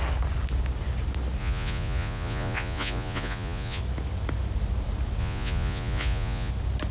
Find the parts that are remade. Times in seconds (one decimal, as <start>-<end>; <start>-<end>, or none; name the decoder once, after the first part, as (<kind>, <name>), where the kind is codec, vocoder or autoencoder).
1.4-3.8 (vocoder, Vocos); 5.2-6.5